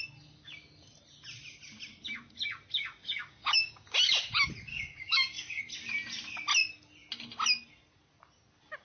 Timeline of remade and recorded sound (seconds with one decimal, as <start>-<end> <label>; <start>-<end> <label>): 0.0-3.2 recorded; 3.2-3.9 remade; 3.9-4.7 recorded; 4.7-5.6 remade; 5.6-8.8 recorded